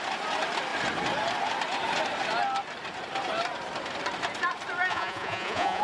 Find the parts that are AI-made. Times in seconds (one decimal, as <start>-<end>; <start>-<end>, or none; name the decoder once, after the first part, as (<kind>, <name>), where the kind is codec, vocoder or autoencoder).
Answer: 4.9-5.8 (vocoder, Vocos)